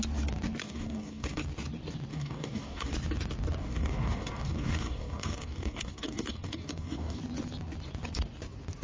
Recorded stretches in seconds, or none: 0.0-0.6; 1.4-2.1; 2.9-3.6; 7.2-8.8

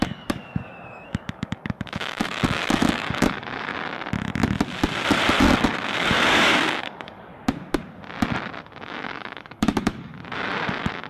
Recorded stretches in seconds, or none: 3.7-5.4; 7.3-8.6; 10.1-10.7

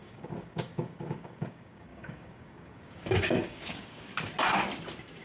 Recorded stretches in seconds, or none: 4.1-5.2

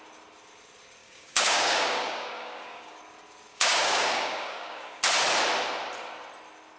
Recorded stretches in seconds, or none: 0.0-1.0; 3.0-3.5; 5.0-6.8

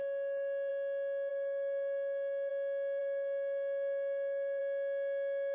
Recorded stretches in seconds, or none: 0.0-1.3; 2.5-3.0; 4.6-5.5

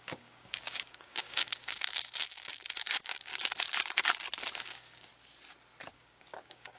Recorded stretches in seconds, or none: 3.3-4.6; 5.1-5.9

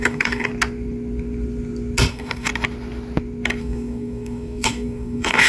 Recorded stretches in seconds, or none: 0.5-2.1; 2.5-3.6

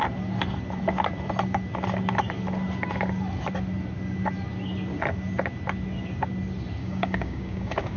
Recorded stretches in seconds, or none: 0.0-6.8